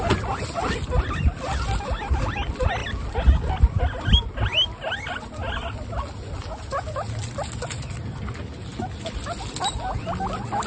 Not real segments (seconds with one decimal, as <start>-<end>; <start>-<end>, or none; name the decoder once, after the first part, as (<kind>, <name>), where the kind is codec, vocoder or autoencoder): none